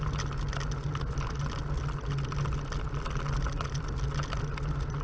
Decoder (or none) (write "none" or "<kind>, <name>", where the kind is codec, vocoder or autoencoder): none